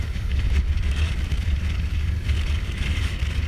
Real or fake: fake